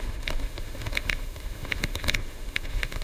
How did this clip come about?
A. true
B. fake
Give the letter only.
B